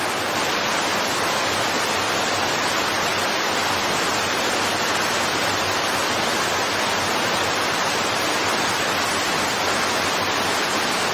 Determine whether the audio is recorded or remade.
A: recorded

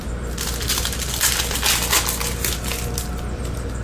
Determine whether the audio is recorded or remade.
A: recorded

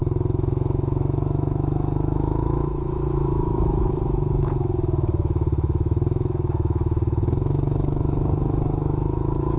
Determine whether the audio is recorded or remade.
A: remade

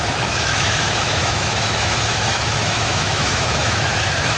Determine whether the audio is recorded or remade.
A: remade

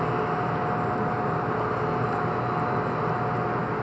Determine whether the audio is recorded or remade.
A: recorded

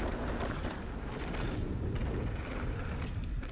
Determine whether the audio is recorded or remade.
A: recorded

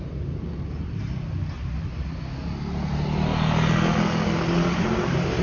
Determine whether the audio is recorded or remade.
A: recorded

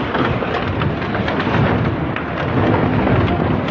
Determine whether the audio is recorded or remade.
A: recorded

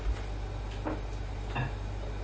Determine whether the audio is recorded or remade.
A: recorded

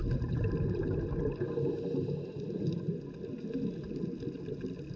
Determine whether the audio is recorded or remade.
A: recorded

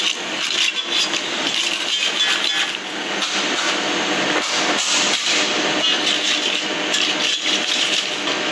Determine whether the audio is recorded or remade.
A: recorded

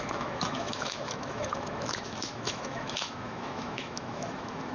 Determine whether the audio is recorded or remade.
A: remade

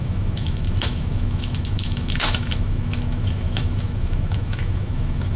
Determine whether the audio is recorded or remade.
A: remade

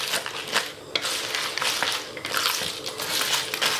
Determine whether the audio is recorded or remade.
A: recorded